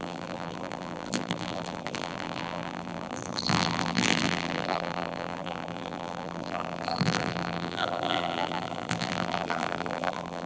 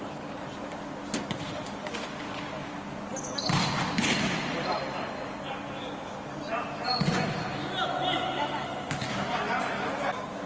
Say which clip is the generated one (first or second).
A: first